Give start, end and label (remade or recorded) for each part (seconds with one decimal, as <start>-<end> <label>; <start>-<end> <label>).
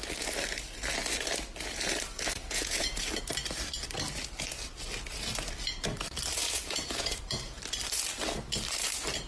0.0-2.4 recorded; 2.4-3.0 remade; 3.0-6.4 recorded; 6.4-7.2 remade; 7.2-9.3 recorded